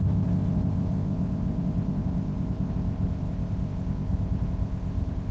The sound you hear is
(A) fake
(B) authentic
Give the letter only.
A